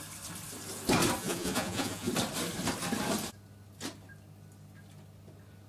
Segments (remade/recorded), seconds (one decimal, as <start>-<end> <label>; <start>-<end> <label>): 0.0-1.2 recorded; 1.2-2.1 remade; 2.1-5.7 recorded